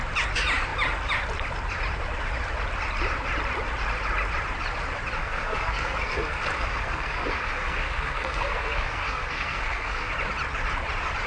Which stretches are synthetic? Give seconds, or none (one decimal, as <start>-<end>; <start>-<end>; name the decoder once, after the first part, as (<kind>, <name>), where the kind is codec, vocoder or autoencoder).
5.2-10.1 (codec, SNAC)